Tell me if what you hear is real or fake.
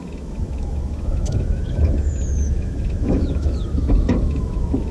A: fake